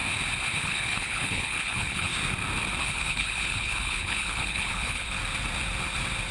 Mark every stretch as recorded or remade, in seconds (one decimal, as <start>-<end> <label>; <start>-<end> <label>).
0.0-0.6 recorded; 0.6-2.1 remade; 2.1-2.8 recorded; 2.8-5.2 remade; 5.2-6.3 recorded